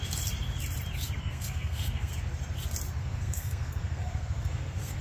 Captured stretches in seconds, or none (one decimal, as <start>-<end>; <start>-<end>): 0.0-1.2; 2.1-3.0